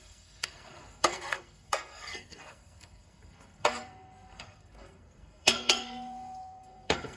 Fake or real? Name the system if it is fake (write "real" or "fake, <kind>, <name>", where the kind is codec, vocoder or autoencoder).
fake, codec, SNAC